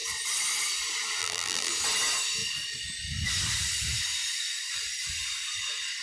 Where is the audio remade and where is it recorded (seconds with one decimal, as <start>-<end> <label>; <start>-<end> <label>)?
0.0-1.2 recorded; 1.2-1.7 remade; 1.7-6.0 recorded